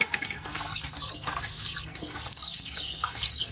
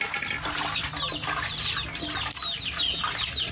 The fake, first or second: first